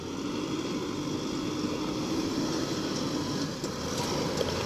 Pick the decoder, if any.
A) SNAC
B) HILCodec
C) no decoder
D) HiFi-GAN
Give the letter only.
C